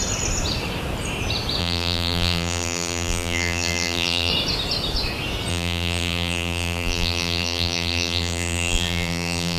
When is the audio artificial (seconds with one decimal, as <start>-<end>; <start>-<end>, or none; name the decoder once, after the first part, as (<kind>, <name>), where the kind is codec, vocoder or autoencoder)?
1.6-4.3 (vocoder, BigVGAN v2); 5.5-9.6